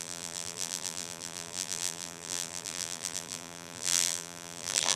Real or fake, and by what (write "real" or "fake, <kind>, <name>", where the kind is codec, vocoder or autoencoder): fake, vocoder, BigVGAN v2